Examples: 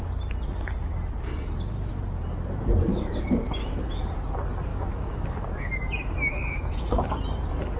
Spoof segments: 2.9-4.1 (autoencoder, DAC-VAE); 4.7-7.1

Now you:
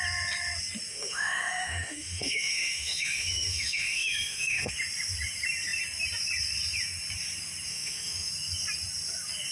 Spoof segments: 0.9-4.7 (autoencoder, DAC-VAE); 7.7-8.3

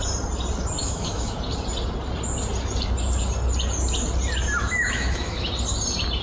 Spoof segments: 0.8-1.4 (autoencoder, DAC-VAE); 4.6-5.5

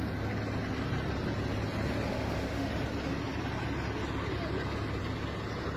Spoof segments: 2.1-2.7 (autoencoder, DAC-VAE)

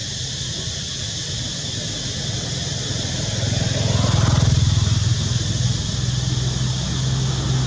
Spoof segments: none